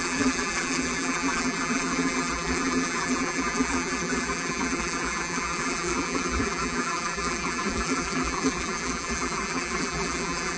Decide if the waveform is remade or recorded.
remade